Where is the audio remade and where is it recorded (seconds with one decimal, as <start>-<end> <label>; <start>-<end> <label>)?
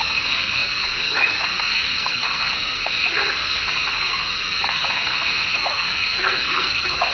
0.0-7.1 remade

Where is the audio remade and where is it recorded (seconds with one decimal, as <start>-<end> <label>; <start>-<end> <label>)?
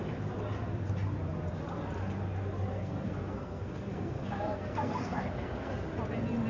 0.0-2.7 recorded; 2.7-5.7 remade; 5.7-6.5 recorded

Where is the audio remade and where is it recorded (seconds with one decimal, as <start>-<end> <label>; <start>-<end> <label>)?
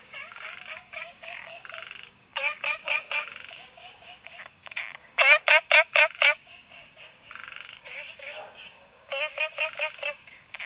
0.0-10.7 remade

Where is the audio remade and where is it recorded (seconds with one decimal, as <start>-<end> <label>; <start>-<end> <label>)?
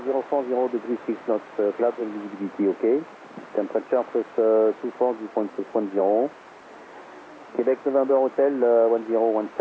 0.0-9.6 recorded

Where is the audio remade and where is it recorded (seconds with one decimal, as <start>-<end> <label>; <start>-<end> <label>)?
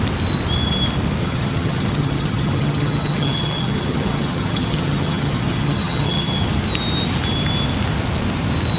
0.0-1.2 recorded; 1.2-6.4 remade; 6.4-8.8 recorded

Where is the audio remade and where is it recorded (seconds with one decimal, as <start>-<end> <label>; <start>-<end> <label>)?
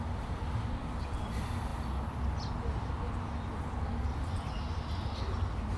0.0-5.8 recorded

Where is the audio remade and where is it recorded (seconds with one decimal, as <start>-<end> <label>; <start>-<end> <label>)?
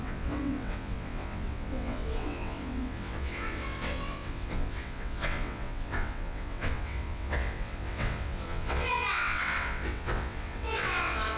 0.0-11.4 remade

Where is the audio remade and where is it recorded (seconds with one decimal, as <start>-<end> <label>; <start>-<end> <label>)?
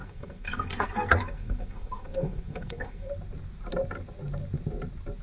0.0-3.1 remade; 3.1-5.2 recorded